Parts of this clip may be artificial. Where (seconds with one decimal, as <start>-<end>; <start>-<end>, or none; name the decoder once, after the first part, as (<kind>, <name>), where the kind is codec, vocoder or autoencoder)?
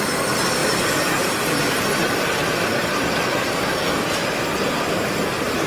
0.6-2.0 (vocoder, BigVGAN v2)